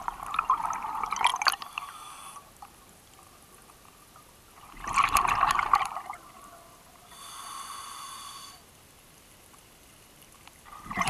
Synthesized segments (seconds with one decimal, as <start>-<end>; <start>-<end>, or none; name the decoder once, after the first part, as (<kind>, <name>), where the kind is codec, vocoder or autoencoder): 1.3-2.3 (vocoder, BigVGAN v2)